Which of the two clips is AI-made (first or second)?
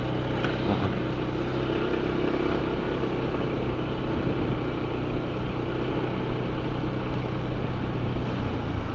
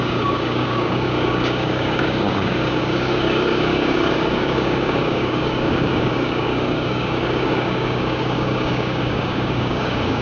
second